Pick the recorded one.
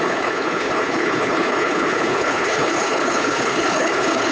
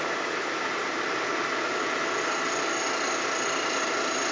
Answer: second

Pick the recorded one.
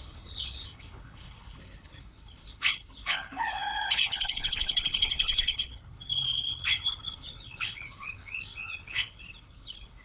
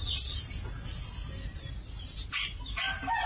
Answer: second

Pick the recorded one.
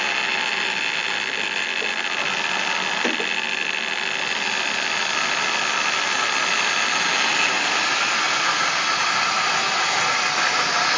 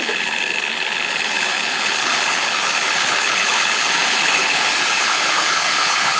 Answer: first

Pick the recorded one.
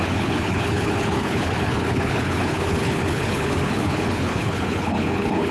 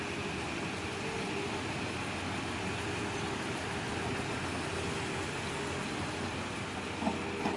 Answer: second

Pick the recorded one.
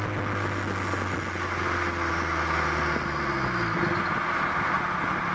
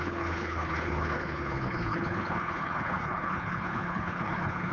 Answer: first